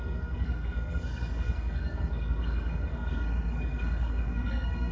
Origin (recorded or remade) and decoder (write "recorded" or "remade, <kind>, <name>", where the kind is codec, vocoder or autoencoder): remade, codec, SNAC